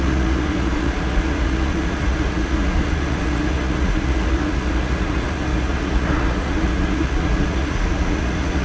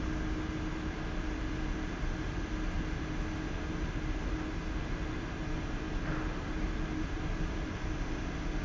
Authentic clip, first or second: second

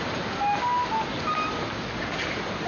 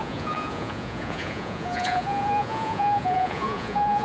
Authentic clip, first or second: first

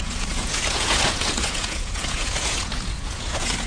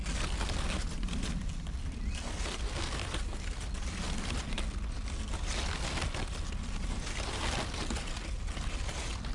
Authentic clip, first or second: second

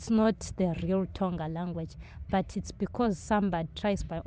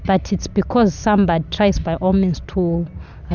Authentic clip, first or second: second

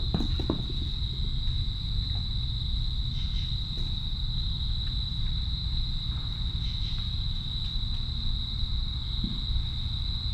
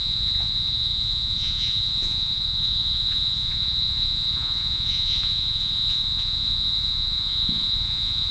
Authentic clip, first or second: first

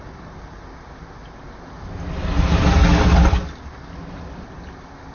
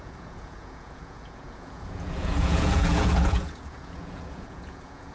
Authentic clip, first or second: first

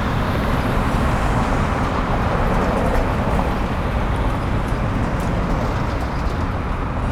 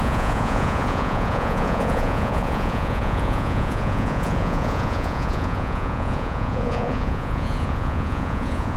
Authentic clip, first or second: first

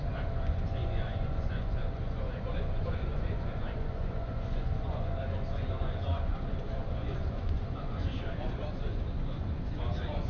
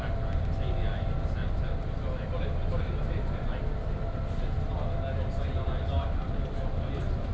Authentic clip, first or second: second